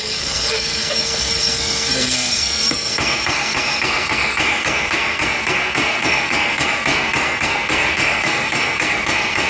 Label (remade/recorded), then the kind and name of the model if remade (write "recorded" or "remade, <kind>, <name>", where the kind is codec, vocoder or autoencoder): remade, codec, SNAC